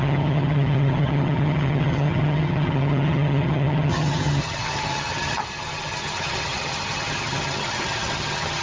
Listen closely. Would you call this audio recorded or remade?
remade